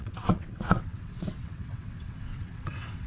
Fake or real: fake